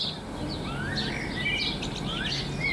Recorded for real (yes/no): yes